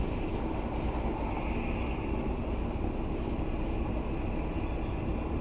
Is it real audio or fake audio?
real